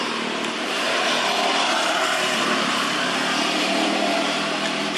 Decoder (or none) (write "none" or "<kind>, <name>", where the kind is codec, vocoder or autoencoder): none